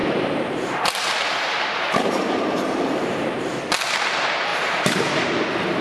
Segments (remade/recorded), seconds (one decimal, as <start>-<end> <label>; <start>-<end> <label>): 0.0-3.4 remade; 3.4-4.5 recorded; 4.5-5.1 remade; 5.1-5.8 recorded